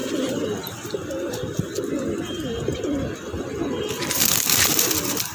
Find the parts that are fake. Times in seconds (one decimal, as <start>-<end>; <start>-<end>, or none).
0.0-1.6